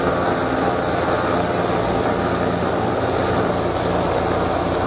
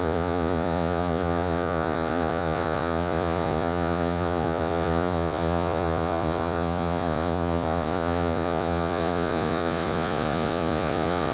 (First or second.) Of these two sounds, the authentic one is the first